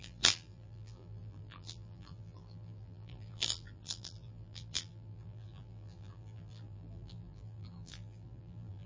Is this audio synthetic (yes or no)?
yes